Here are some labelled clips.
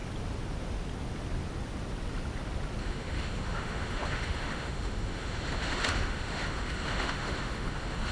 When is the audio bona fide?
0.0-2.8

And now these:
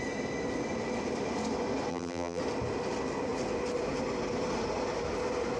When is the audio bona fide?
0.0-1.9; 2.4-5.6

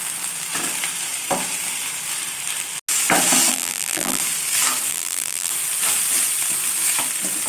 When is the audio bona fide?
0.0-3.5; 4.2-4.9; 5.5-7.5

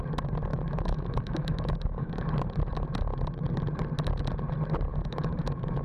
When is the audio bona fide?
0.0-0.5; 2.3-4.9

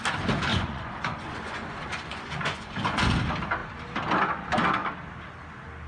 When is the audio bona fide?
0.0-0.5; 3.0-5.9

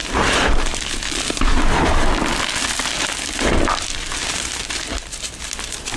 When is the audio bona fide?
0.0-6.0

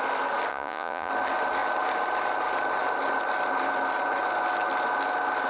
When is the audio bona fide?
0.0-0.5; 1.1-5.5

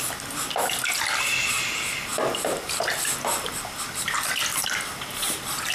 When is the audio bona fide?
0.0-5.7